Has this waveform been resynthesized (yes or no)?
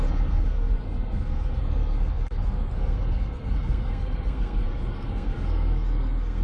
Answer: yes